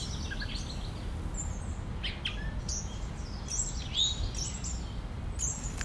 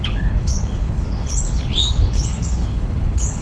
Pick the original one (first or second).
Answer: first